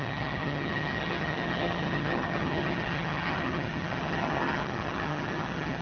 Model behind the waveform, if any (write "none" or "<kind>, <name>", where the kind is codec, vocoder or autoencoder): vocoder, HiFi-GAN